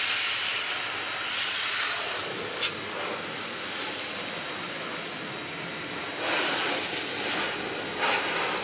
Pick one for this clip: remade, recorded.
recorded